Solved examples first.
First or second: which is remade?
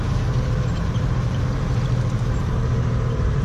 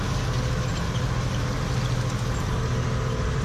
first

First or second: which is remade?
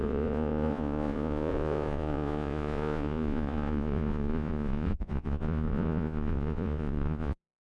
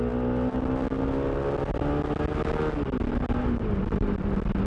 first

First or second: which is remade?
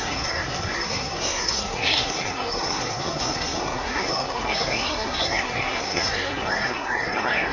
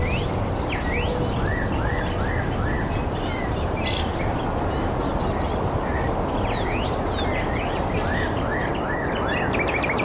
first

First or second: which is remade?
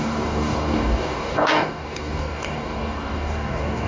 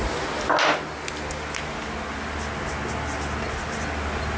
first